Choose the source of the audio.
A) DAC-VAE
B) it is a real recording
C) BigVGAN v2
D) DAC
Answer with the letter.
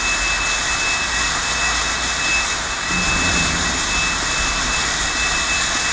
B